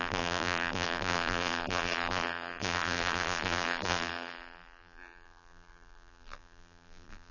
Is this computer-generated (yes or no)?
yes